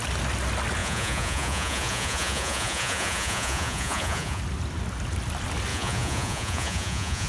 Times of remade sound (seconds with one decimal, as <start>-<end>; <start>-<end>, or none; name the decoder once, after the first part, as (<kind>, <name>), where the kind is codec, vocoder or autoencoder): 0.8-4.4 (vocoder, Vocos); 5.7-7.3